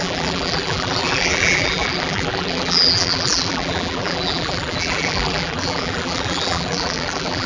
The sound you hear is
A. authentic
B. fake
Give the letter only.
B